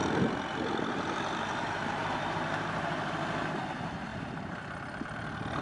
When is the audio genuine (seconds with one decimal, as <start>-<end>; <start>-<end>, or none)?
0.0-0.9; 4.1-5.6